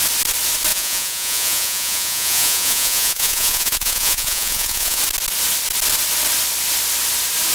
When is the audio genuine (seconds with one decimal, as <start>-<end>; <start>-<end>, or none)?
0.0-0.7; 5.0-7.5